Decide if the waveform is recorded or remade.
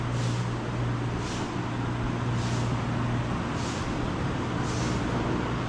recorded